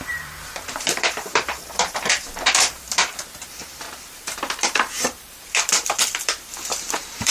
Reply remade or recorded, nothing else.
remade